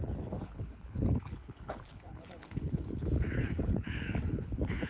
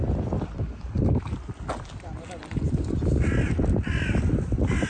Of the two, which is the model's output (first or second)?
first